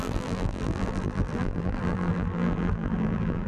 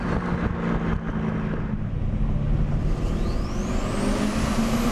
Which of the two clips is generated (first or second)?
first